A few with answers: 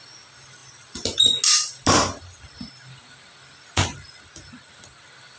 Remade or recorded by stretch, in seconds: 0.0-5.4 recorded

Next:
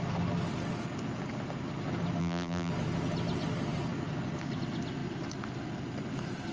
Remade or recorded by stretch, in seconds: 0.0-2.2 recorded; 2.2-2.7 remade; 2.7-6.5 recorded